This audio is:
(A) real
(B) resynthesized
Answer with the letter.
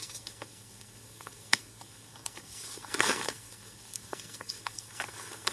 B